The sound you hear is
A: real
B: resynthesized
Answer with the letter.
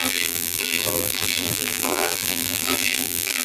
B